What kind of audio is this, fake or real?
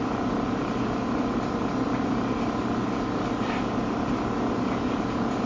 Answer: real